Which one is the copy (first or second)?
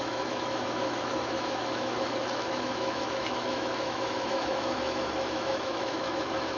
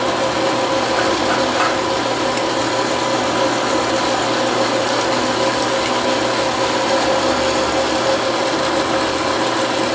first